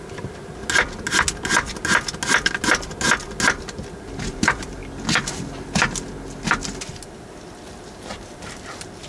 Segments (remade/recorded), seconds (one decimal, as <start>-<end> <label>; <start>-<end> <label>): 0.0-0.6 remade; 0.6-4.2 recorded; 4.2-4.8 remade; 4.8-8.7 recorded; 8.7-9.1 remade